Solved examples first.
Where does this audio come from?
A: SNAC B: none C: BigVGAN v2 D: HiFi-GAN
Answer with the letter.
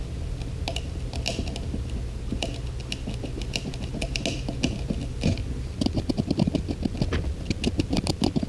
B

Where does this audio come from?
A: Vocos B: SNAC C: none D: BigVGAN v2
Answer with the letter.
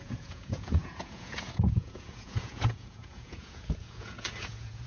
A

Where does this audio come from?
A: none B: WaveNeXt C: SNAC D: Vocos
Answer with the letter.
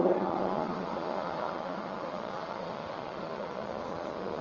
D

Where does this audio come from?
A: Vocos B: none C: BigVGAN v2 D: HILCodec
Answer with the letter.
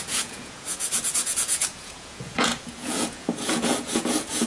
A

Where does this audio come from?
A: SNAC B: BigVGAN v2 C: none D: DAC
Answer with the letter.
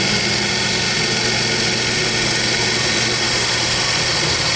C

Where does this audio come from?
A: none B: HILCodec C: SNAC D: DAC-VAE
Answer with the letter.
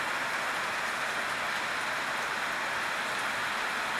A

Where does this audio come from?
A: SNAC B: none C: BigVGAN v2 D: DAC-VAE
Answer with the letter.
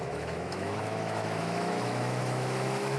D